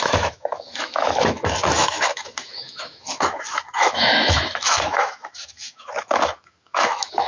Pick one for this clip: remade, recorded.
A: remade